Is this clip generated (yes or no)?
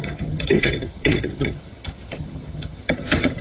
yes